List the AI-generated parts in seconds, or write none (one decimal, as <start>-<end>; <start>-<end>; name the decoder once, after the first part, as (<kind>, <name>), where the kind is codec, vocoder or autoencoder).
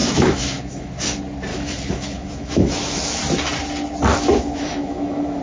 0.0-0.9 (autoencoder, DAC-VAE); 1.5-3.2; 4.1-5.4